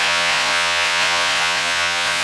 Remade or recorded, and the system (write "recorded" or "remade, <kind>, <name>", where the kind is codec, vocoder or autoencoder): remade, vocoder, Vocos